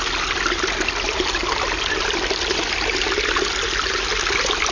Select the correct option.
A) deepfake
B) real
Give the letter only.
B